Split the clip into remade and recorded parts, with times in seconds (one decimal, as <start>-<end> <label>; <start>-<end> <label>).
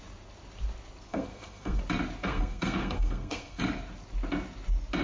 0.0-1.1 recorded; 1.1-1.8 remade; 1.8-2.2 recorded; 2.2-3.6 remade; 3.6-5.0 recorded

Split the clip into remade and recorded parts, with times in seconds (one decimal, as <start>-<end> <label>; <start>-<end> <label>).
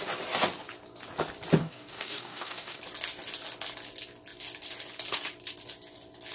0.0-1.6 recorded; 1.6-2.8 remade; 2.8-6.3 recorded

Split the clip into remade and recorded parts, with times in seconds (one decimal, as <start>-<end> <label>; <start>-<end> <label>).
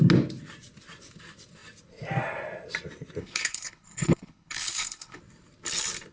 0.0-3.2 recorded; 3.2-5.2 remade; 5.2-6.1 recorded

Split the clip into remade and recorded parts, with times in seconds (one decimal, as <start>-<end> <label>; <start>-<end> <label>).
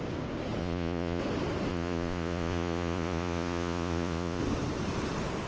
0.0-0.6 recorded; 0.6-1.2 remade; 1.2-1.7 recorded; 1.7-4.4 remade; 4.4-5.5 recorded